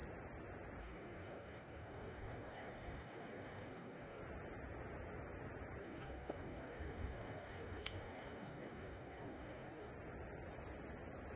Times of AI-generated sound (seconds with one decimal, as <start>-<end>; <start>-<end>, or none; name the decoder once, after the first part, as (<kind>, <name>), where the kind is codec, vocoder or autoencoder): 0.8-4.2 (codec, DAC); 5.8-9.9